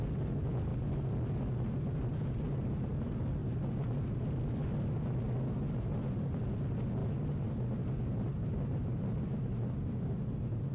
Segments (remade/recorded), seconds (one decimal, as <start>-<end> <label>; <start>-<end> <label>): 0.0-10.7 recorded